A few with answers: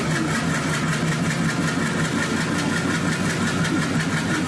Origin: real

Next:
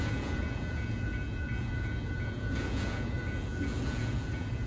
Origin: fake